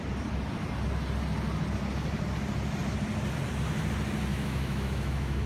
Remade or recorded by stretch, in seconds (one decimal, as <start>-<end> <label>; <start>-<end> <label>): 0.0-4.3 recorded; 4.3-5.5 remade